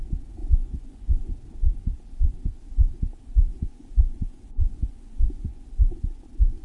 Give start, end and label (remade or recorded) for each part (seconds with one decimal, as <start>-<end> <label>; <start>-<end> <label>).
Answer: 0.0-0.4 recorded; 0.4-1.3 remade; 1.3-3.5 recorded; 3.5-5.7 remade; 5.7-6.6 recorded

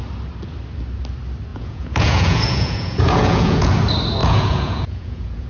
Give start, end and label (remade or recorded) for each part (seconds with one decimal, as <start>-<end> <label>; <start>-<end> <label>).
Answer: 0.0-1.5 recorded; 1.5-3.7 remade; 3.7-4.2 recorded; 4.2-5.5 remade